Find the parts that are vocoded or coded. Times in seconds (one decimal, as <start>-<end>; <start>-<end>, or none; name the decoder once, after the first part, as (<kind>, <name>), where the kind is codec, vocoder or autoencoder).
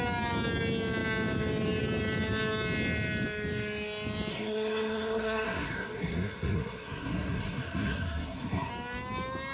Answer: 4.3-8.7 (codec, SNAC)